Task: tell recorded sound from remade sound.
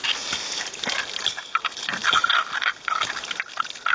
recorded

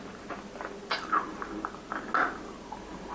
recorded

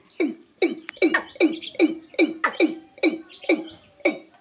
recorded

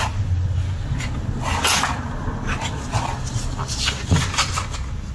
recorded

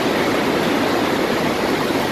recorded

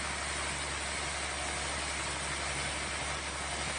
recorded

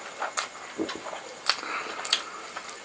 recorded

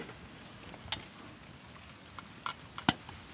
recorded